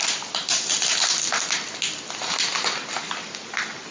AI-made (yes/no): no